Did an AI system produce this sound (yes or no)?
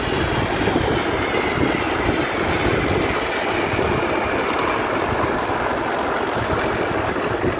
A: no